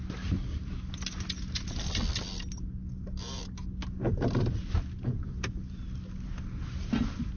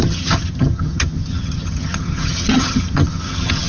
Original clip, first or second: first